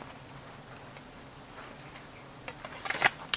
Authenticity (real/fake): real